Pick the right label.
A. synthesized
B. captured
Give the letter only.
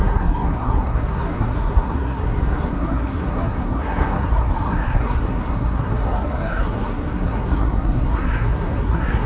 A